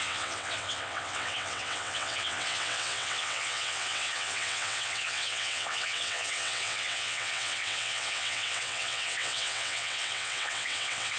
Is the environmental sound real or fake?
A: fake